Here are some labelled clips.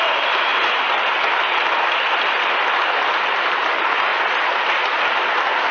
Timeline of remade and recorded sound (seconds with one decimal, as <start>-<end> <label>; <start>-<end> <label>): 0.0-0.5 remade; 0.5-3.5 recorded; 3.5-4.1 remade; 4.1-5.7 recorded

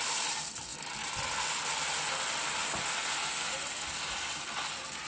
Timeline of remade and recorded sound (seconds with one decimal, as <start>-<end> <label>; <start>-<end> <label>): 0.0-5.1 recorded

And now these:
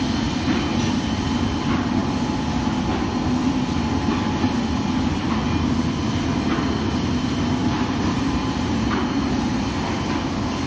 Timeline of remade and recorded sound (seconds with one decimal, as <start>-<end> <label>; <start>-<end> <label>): 0.0-7.6 recorded; 7.6-9.7 remade; 9.7-10.7 recorded

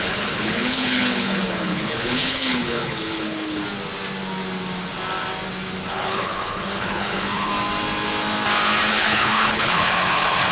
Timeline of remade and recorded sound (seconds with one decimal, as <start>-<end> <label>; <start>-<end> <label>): 0.0-3.6 remade; 3.6-5.9 recorded; 5.9-7.5 remade; 7.5-8.9 recorded; 8.9-10.5 remade

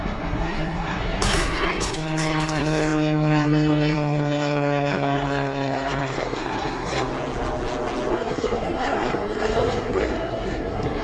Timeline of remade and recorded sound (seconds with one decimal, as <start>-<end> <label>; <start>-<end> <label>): 0.0-7.1 remade; 7.1-8.1 recorded; 8.1-11.0 remade